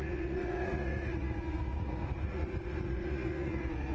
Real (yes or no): no